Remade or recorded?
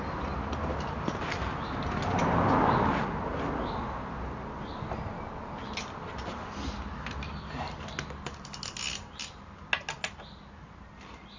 recorded